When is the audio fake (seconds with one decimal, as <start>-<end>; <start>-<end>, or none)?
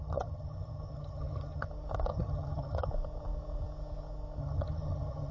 0.0-1.7; 2.1-2.9; 4.4-5.3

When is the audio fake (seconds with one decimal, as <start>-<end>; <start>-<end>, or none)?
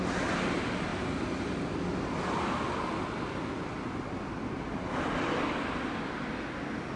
none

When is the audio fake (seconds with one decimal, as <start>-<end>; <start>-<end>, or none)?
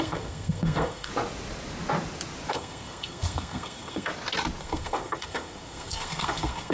0.0-1.1; 2.5-4.1; 4.6-6.7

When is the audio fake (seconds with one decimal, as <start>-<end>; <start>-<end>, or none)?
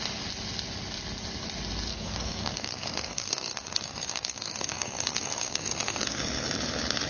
1.9-6.2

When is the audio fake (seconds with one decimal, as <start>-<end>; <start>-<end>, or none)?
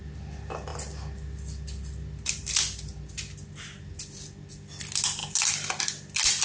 none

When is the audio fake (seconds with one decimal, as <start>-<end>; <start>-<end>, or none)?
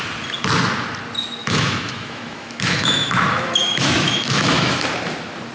1.4-4.7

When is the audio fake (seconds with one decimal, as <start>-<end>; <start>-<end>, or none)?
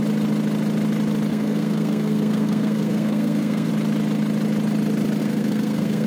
1.3-3.7; 5.2-6.1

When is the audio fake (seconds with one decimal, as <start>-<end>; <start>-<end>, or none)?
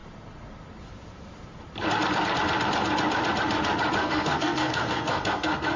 4.0-5.8